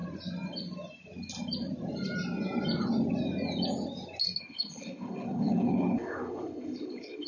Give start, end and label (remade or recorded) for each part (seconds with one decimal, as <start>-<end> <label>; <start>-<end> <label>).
0.0-4.4 recorded; 4.4-7.3 remade